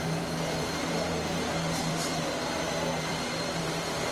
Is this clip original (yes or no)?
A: no